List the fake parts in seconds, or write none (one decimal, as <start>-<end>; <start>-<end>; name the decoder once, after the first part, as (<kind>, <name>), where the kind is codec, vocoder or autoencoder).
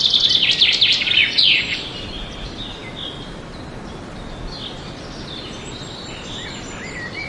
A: 1.2-1.8 (vocoder, Vocos)